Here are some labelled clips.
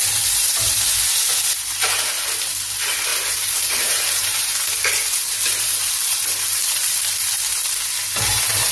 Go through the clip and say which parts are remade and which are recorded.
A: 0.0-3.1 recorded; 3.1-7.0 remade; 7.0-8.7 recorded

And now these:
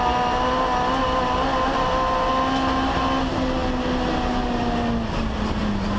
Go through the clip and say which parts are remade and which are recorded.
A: 0.0-6.0 recorded

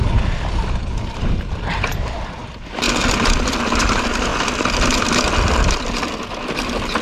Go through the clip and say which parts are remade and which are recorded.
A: 0.0-0.8 recorded; 0.8-2.4 remade; 2.4-3.8 recorded; 3.8-4.3 remade; 4.3-7.0 recorded

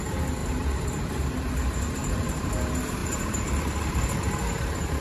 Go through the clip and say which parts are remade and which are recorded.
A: 0.0-0.4 recorded; 0.4-2.5 remade; 2.5-3.0 recorded; 3.0-4.3 remade; 4.3-5.0 recorded

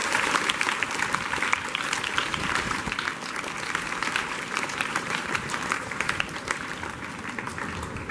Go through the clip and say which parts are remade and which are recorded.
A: 0.0-0.6 remade; 0.6-2.3 recorded; 2.3-3.1 remade; 3.1-4.2 recorded; 4.2-6.7 remade; 6.7-8.1 recorded

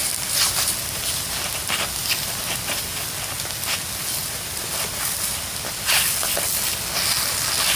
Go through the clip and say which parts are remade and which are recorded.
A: 0.0-3.0 remade; 3.0-4.2 recorded; 4.2-5.4 remade; 5.4-7.8 recorded

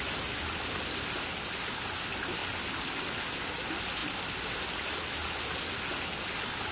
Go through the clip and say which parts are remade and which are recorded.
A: 0.0-6.7 recorded

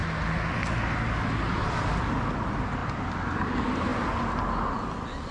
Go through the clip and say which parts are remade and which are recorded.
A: 0.0-2.0 recorded; 2.0-3.9 remade; 3.9-5.3 recorded